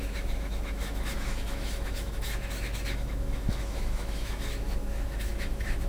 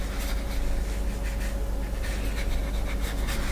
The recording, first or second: second